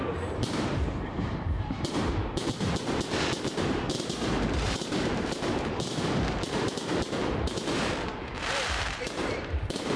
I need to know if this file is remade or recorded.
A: remade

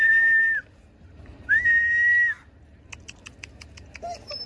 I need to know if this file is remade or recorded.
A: recorded